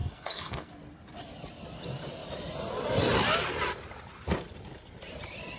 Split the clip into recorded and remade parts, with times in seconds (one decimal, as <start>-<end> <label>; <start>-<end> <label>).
0.0-0.7 remade; 0.7-5.6 recorded